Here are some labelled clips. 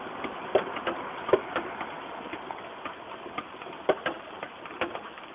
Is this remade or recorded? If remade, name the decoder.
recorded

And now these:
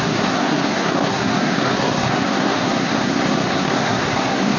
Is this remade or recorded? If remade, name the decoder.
remade, codec, SNAC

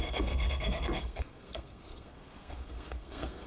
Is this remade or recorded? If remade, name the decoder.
remade, codec, SNAC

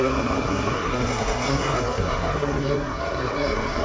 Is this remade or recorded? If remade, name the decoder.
remade, codec, SNAC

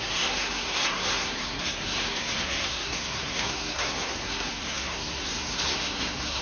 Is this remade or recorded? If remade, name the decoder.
remade, codec, SNAC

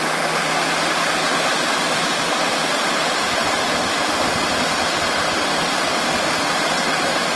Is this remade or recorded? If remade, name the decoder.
recorded